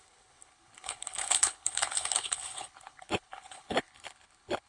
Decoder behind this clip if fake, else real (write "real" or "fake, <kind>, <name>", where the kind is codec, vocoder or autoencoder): fake, codec, HILCodec